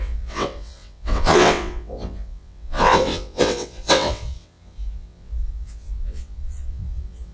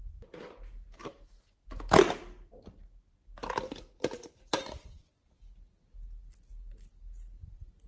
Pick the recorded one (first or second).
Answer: second